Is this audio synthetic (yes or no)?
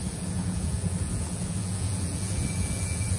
yes